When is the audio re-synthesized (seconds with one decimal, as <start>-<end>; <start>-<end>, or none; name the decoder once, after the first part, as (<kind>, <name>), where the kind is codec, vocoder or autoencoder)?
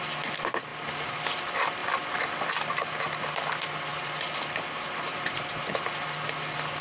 1.8-2.7 (vocoder, BigVGAN v2); 3.9-5.5